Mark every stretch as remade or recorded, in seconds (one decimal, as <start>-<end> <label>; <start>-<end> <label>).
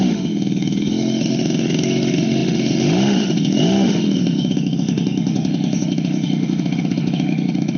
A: 0.0-7.8 remade